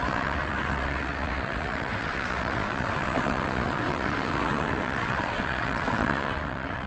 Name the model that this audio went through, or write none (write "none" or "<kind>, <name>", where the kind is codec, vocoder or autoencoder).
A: vocoder, WaveNeXt